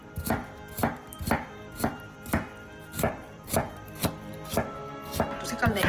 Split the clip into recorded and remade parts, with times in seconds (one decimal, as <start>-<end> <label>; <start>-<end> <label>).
0.0-0.8 recorded; 0.8-4.3 remade; 4.3-5.9 recorded